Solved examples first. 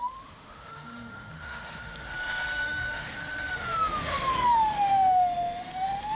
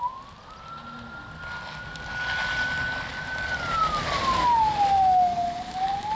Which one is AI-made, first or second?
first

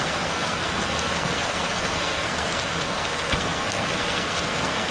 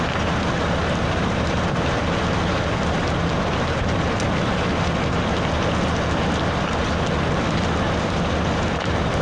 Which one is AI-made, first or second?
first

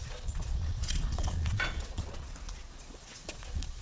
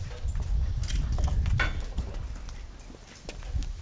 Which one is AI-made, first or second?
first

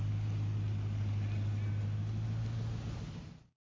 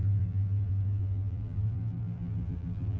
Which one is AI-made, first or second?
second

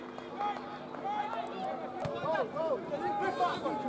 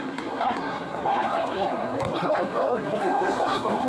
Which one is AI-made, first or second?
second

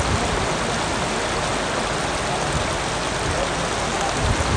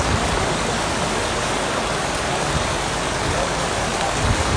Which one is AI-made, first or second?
second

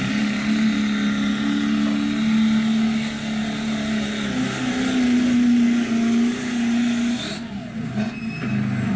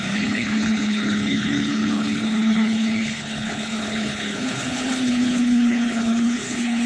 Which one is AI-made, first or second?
second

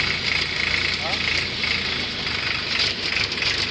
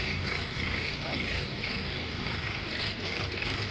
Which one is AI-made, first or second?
second